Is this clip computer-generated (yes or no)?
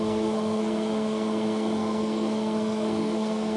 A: yes